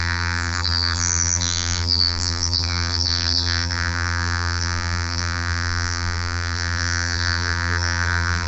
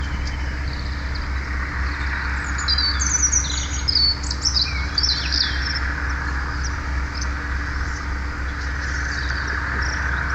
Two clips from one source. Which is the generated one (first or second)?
first